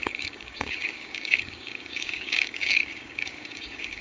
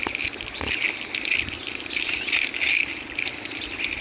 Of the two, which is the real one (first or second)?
second